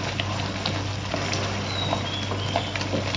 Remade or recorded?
recorded